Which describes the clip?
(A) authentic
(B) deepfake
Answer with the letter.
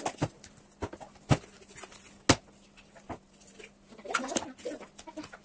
A